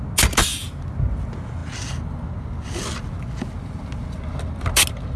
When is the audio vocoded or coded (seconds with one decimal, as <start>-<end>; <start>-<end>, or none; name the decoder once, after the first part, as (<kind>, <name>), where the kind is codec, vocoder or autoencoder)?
none